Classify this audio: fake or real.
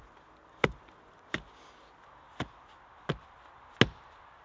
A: real